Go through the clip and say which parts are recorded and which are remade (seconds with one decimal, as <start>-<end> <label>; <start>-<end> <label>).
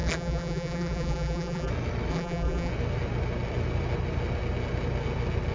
0.0-1.7 remade; 1.7-2.1 recorded; 2.1-2.7 remade; 2.7-5.5 recorded